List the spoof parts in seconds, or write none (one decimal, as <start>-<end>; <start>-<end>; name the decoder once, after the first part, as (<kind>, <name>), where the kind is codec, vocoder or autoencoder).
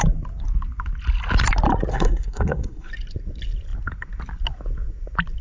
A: 1.9-2.9 (codec, SNAC)